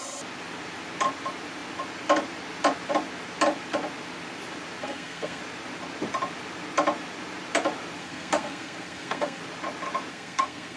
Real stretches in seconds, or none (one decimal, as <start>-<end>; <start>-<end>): 0.0-4.8; 5.4-8.0; 9.4-10.1

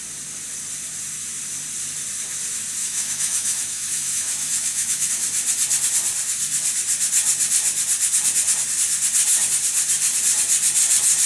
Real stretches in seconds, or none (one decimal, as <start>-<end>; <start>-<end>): 0.0-2.8; 5.1-11.3

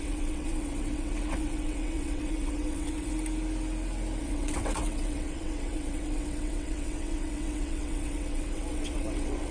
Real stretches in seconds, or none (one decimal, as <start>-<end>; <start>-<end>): 3.1-4.2

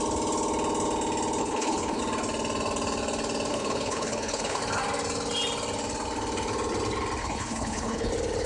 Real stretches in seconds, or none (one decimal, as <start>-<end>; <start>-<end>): 0.0-1.4; 2.0-3.5; 4.6-7.2; 8.1-8.5